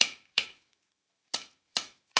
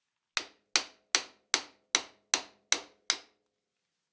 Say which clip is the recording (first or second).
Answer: second